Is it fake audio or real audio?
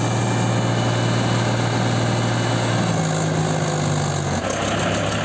real